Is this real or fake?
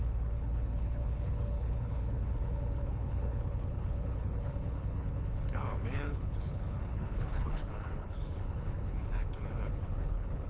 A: fake